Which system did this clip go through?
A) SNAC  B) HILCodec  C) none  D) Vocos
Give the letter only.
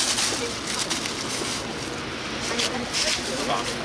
C